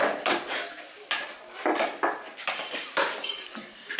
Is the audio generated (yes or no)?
no